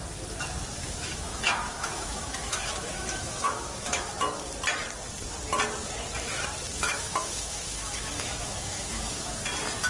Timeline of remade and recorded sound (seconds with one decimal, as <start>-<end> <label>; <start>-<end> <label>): 0.0-0.8 recorded; 0.8-4.1 remade; 4.1-6.7 recorded; 6.7-9.4 remade; 9.4-9.9 recorded